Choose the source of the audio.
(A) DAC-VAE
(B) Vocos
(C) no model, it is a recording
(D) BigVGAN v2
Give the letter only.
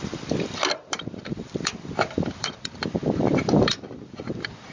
D